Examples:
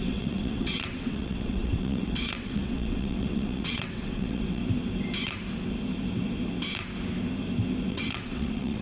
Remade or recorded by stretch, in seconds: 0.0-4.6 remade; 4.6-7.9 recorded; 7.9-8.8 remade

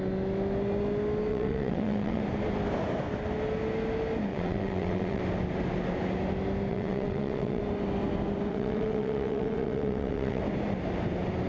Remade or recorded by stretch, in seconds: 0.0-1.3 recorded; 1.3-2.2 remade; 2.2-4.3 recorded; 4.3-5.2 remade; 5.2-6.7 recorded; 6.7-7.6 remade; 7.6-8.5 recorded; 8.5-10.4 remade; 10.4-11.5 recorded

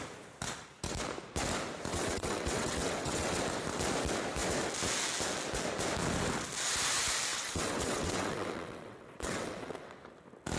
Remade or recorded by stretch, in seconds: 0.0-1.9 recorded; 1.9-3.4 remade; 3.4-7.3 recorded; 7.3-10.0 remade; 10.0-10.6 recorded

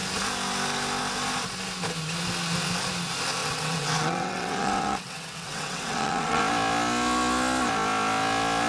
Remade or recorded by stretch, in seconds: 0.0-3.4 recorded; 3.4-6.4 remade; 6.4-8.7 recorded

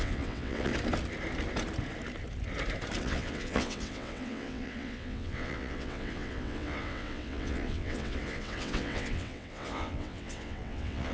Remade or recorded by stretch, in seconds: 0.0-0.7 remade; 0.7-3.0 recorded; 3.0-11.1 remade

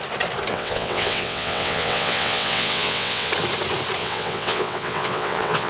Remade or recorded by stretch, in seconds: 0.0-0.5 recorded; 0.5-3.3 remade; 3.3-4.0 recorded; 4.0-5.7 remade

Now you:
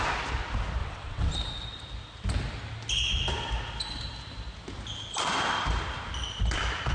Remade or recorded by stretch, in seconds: 0.0-0.8 recorded; 0.8-1.3 remade; 1.3-6.9 recorded